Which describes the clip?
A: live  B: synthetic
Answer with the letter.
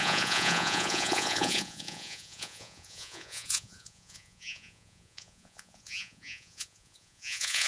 B